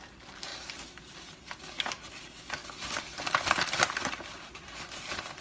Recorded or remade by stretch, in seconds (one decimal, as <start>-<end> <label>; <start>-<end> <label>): 0.0-5.4 recorded